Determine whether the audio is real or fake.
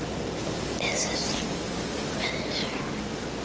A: real